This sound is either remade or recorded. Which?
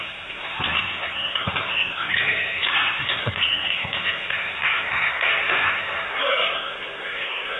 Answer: remade